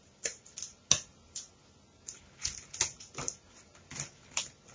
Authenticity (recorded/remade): recorded